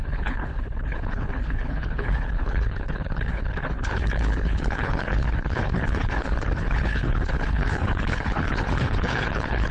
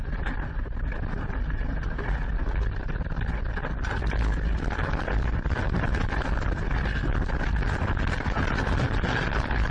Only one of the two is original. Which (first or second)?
second